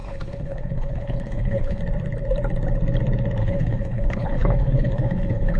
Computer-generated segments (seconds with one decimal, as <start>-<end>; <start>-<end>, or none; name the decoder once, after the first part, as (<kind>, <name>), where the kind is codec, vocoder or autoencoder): 0.0-1.8 (codec, HILCodec); 3.4-5.6